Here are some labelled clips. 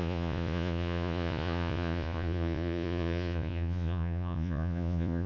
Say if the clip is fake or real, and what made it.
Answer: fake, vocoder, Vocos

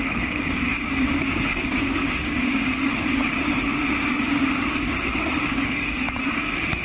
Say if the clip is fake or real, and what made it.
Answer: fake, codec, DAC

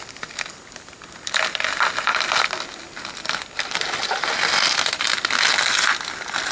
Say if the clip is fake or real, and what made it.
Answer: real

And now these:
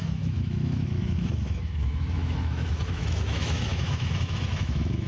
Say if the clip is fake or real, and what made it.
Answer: fake, autoencoder, DAC-VAE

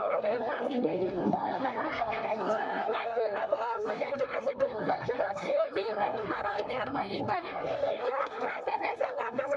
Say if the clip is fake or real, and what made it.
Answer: fake, codec, SNAC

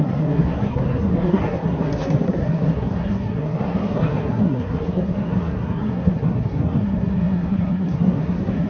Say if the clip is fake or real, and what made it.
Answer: fake, codec, SNAC